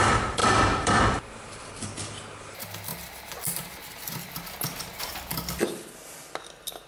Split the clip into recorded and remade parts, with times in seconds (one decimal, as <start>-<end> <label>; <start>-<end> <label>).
0.0-0.4 recorded; 0.4-1.0 remade; 1.0-6.9 recorded